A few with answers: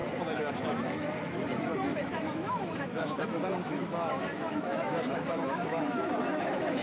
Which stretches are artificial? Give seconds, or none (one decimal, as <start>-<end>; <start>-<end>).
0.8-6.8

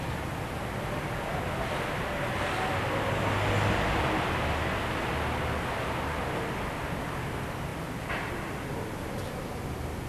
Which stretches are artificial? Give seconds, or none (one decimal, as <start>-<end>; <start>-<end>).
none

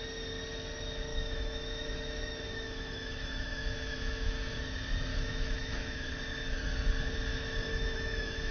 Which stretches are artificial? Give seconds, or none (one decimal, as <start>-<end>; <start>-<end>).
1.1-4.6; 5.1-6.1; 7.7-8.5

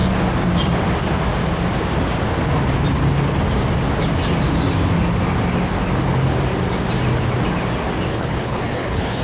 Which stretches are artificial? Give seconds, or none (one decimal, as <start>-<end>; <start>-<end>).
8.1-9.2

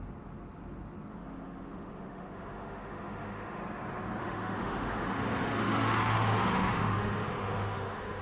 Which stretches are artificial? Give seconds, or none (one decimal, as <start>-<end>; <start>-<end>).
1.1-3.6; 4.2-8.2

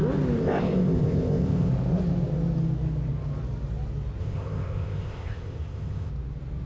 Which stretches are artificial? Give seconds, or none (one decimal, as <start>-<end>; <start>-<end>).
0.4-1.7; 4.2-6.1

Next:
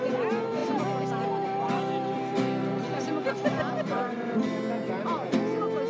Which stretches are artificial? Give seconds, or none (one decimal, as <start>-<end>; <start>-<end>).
none